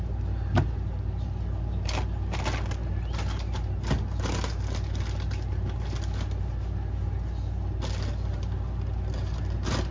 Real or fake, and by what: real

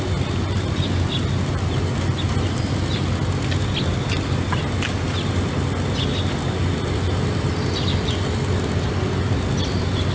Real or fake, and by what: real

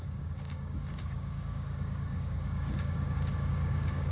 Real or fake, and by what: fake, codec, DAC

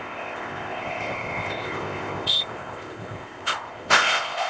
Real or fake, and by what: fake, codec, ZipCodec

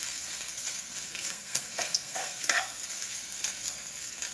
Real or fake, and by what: fake, codec, SNAC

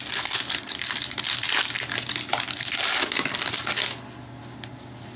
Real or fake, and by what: real